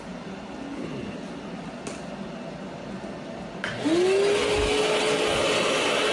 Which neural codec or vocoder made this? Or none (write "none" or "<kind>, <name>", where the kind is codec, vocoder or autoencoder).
none